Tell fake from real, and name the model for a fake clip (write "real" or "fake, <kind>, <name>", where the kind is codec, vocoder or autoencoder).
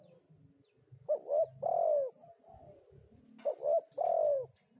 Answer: real